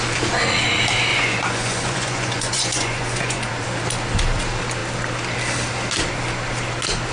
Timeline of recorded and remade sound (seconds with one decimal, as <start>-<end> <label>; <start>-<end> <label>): 0.0-1.1 recorded; 1.1-3.5 remade; 3.5-7.1 recorded